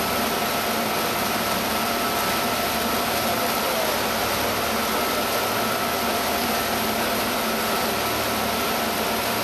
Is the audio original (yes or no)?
yes